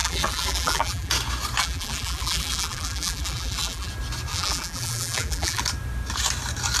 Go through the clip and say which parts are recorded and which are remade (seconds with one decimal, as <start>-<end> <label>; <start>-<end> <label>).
0.0-1.1 remade; 1.1-1.6 recorded; 1.6-3.9 remade; 3.9-4.3 recorded; 4.3-5.6 remade; 5.6-6.8 recorded